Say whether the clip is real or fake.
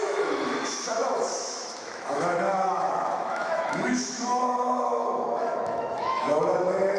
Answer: fake